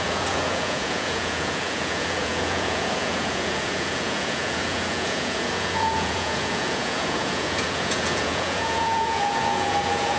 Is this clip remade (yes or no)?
yes